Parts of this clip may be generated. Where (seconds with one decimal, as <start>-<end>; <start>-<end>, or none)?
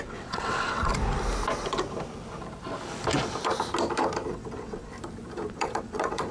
0.0-0.9; 4.3-4.9; 5.5-6.3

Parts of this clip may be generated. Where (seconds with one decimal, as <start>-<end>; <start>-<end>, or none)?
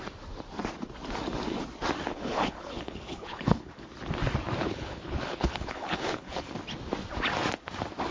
2.1-3.7; 4.6-6.5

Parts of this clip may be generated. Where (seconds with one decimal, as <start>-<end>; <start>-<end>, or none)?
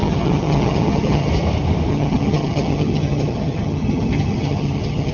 0.0-1.3; 1.9-5.1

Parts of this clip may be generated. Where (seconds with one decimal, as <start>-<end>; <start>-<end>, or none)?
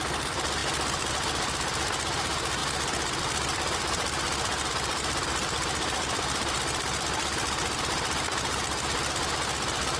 none